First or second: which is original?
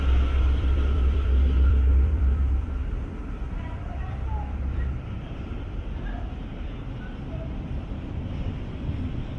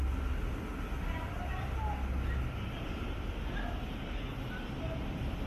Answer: second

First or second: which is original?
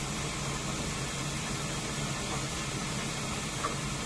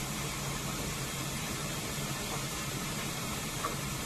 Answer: first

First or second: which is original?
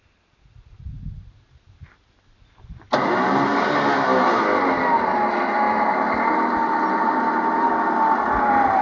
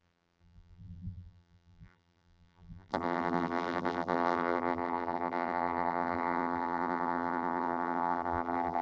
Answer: first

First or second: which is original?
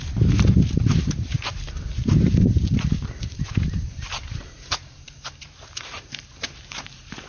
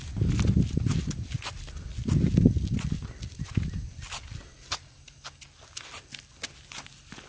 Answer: second